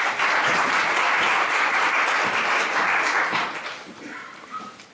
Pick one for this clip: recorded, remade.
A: remade